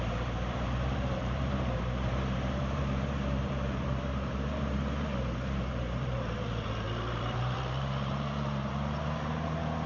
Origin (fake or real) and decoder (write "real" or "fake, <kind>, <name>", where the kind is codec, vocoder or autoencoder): fake, vocoder, BigVGAN v2